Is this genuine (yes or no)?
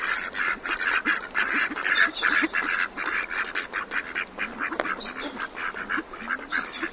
yes